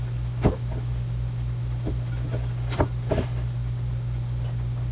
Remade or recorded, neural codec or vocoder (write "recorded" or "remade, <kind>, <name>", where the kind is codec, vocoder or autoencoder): recorded